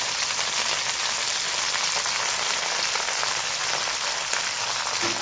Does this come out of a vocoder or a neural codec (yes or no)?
no